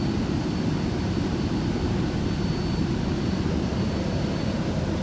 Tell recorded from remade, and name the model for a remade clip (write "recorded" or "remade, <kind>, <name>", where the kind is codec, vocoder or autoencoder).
recorded